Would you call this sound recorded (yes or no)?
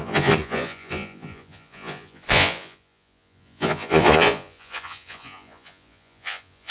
no